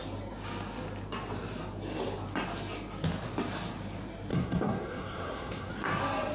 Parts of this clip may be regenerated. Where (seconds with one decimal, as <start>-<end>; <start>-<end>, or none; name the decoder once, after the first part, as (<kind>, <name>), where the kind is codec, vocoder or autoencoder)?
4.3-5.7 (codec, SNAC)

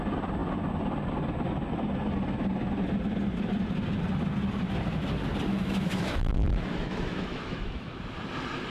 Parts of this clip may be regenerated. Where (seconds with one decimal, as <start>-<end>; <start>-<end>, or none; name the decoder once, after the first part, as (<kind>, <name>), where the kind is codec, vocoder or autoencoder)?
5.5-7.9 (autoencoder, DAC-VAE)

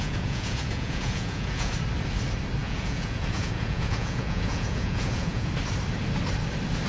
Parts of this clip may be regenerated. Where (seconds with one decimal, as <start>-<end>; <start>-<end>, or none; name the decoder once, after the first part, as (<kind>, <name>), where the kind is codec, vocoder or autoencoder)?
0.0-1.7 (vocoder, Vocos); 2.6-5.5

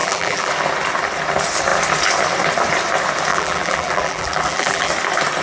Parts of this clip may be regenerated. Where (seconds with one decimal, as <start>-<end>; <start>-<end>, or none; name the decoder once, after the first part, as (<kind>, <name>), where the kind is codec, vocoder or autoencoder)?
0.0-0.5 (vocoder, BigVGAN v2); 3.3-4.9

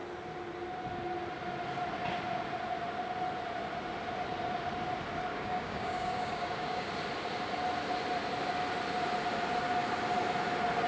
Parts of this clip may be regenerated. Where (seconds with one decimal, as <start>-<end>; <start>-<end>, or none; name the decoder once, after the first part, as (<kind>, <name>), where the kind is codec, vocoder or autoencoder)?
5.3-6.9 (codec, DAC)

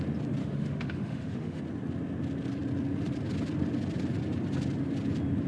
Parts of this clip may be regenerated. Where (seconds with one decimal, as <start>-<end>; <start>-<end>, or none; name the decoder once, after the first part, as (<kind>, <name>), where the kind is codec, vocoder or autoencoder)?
0.4-1.6 (autoencoder, DAC-VAE)

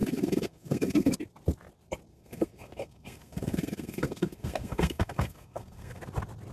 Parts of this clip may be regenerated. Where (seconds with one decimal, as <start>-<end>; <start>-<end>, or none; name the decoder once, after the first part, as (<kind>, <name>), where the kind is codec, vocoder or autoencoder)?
0.0-1.1 (codec, SNAC); 2.1-6.0